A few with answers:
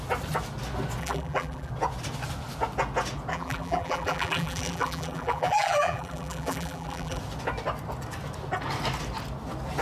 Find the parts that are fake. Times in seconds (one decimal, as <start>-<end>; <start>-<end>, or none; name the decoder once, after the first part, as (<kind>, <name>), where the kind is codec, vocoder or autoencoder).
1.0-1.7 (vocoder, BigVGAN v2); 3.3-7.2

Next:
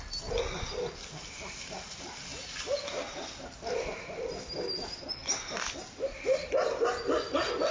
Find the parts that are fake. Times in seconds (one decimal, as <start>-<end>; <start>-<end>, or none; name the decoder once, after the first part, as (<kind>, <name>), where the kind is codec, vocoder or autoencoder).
none

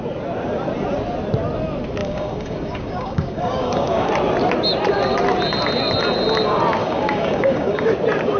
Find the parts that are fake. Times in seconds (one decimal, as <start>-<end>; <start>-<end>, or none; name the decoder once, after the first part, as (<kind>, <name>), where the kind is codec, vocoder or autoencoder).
2.0-4.1 (codec, DAC); 6.8-7.9

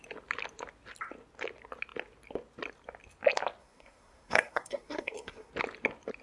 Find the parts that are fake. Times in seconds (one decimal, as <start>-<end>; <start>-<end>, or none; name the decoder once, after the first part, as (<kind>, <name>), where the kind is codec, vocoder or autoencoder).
3.6-5.5 (codec, SNAC)